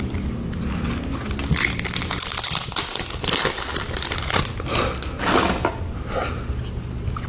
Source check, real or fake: real